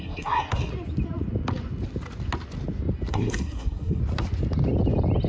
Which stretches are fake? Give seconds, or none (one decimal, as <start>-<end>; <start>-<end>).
0.0-0.7; 3.1-4.0